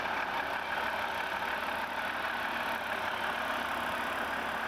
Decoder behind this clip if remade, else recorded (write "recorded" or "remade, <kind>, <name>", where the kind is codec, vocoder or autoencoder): recorded